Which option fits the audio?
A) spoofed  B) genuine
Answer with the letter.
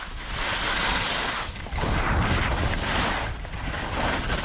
B